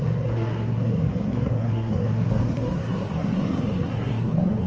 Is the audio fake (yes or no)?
yes